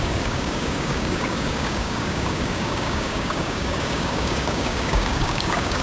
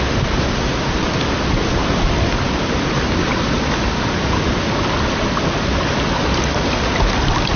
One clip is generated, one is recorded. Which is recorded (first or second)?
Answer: second